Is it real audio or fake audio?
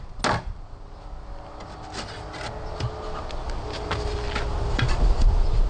real